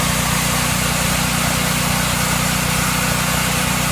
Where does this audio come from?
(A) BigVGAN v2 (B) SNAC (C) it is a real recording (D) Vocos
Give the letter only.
C